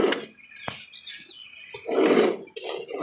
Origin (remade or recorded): recorded